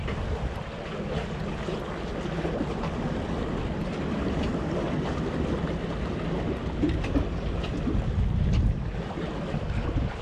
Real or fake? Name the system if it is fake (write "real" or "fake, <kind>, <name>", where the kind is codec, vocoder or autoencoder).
real